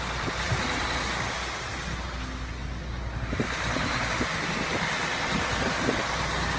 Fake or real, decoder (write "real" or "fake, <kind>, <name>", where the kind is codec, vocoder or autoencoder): real